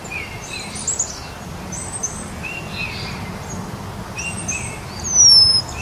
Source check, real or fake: real